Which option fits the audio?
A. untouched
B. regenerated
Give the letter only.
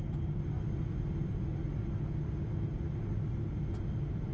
A